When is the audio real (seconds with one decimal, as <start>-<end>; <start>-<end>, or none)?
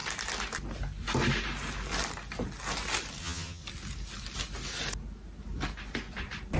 0.0-3.2; 3.6-6.6